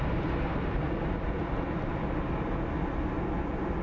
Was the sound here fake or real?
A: real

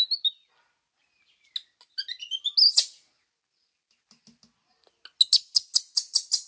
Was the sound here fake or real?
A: real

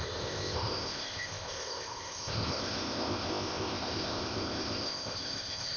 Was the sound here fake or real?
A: fake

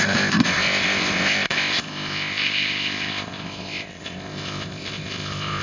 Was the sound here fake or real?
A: fake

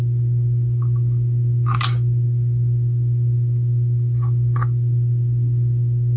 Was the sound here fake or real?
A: real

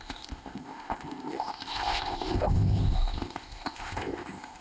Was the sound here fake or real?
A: fake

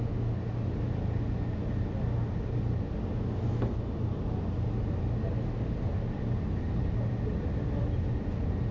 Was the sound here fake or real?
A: real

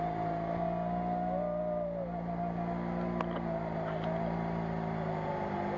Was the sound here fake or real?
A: real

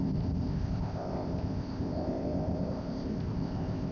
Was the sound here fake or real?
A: fake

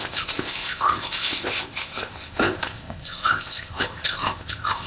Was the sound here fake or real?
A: fake